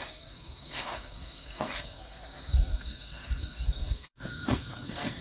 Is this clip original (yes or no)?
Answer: no